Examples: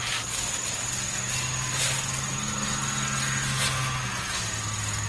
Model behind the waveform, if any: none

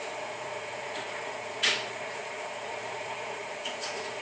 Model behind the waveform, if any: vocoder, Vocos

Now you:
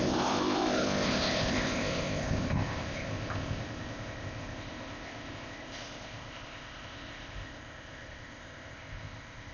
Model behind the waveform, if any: codec, ZipCodec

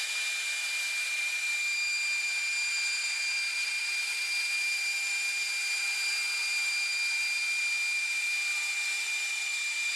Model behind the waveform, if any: vocoder, BigVGAN v2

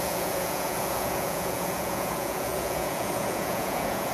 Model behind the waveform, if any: vocoder, Vocos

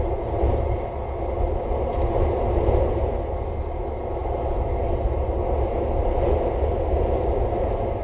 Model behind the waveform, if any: none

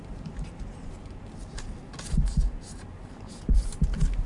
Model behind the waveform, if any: none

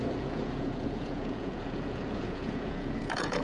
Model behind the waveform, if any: vocoder, Vocos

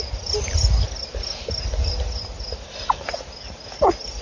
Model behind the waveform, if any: vocoder, BigVGAN v2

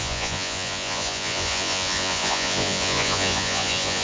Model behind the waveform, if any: vocoder, Vocos